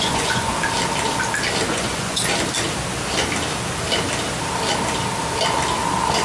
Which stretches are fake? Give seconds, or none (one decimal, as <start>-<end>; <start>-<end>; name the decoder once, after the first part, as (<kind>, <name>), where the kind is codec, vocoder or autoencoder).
0.0-0.5 (vocoder, Vocos); 1.7-2.2